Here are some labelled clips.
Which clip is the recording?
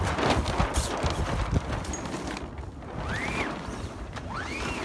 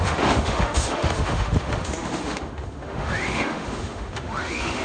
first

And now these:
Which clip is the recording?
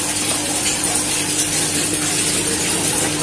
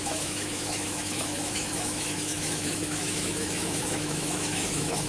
first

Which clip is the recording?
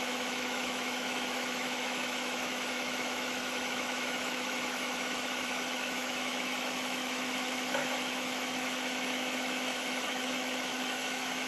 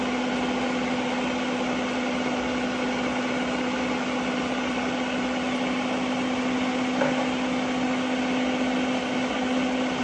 second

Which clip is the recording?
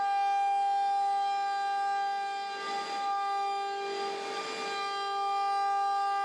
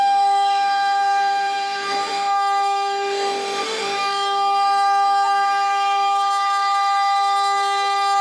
first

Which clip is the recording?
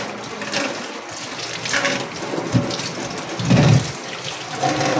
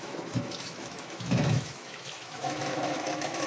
first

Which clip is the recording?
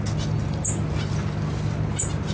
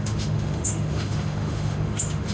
first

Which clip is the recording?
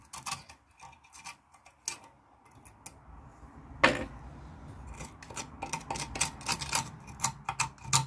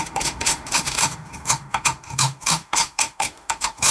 first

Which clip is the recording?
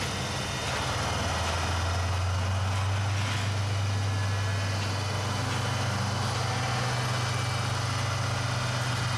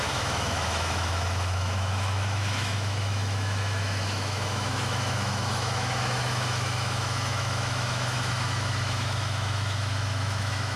first